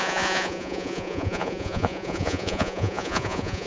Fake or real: fake